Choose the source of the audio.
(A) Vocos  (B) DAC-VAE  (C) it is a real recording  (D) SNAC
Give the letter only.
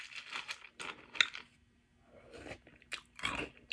C